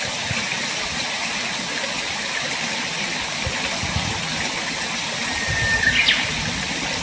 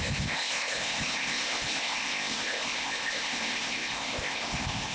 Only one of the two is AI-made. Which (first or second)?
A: second